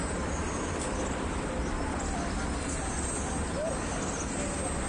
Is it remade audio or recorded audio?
recorded